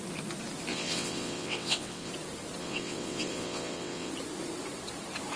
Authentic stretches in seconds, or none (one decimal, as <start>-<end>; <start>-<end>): 0.0-0.7; 2.1-2.6; 4.1-5.4